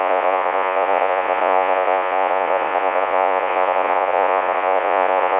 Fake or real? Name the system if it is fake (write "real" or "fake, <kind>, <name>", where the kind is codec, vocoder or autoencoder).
fake, vocoder, Vocos